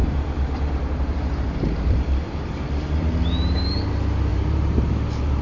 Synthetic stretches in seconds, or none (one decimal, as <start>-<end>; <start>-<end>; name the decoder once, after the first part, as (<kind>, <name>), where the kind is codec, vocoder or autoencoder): 0.0-3.2 (vocoder, BigVGAN v2); 4.3-5.4